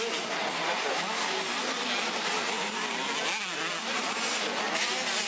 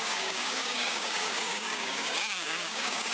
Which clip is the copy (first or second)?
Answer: second